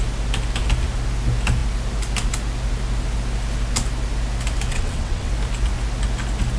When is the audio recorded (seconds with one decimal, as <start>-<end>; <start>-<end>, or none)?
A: 0.0-4.7; 5.3-6.6

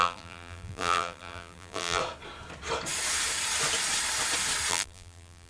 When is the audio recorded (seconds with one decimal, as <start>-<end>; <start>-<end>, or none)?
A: 2.0-4.7

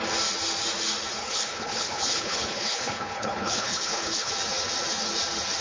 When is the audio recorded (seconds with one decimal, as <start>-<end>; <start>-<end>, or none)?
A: 0.0-1.2; 4.3-5.6